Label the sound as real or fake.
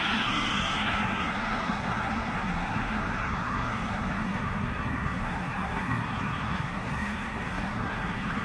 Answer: fake